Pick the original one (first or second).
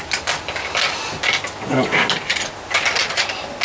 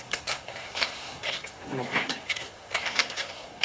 first